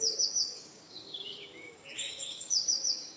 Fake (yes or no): yes